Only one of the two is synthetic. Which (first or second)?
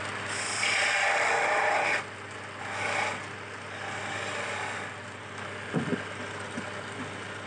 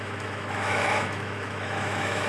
second